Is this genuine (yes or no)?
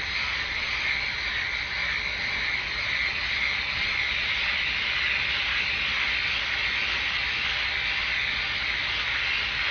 yes